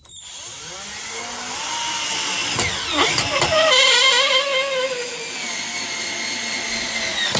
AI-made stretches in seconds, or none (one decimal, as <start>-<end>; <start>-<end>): none